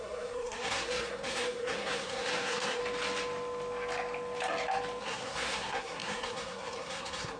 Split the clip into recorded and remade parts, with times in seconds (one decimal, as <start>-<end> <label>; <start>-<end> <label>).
0.0-2.8 remade; 2.8-5.0 recorded; 5.0-7.4 remade